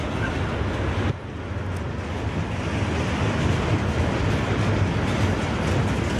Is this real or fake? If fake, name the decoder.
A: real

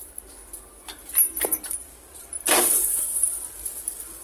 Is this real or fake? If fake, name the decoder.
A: real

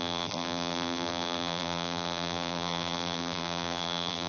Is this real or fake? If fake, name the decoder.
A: fake, vocoder, BigVGAN v2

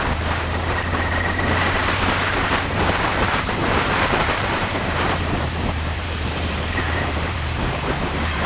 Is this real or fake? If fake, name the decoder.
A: fake, vocoder, BigVGAN v2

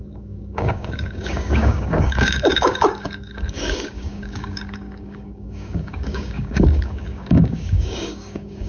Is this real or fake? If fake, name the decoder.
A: fake, codec, DAC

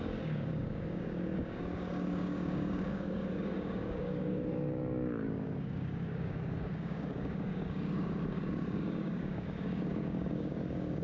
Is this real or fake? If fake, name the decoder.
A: fake, codec, DAC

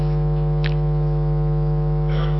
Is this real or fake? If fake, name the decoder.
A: fake, autoencoder, DAC-VAE